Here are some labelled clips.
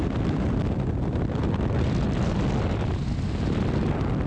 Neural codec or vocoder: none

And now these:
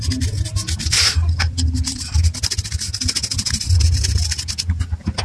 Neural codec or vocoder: none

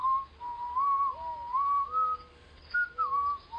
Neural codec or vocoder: none